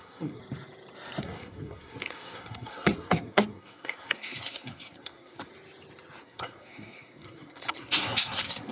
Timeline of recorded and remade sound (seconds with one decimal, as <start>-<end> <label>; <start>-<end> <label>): 0.0-0.4 remade; 0.4-1.2 recorded; 1.2-5.5 remade; 5.5-6.2 recorded; 6.2-8.7 remade